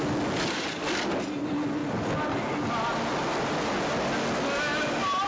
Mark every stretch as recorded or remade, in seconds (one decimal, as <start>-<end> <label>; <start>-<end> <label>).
0.0-5.3 recorded